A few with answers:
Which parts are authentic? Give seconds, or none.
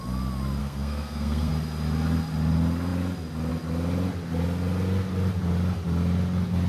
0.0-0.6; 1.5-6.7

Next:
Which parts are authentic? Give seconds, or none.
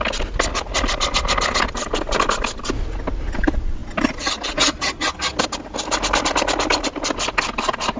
0.0-8.0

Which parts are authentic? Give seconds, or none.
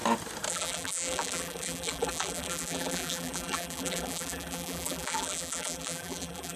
0.0-0.5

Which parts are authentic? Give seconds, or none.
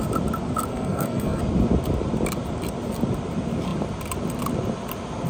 0.0-0.7; 1.4-5.3